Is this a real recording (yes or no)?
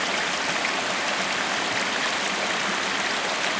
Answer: yes